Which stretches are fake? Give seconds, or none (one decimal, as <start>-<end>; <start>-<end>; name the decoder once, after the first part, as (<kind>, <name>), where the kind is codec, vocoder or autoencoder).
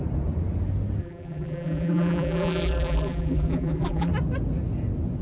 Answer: 1.0-4.1 (vocoder, BigVGAN v2)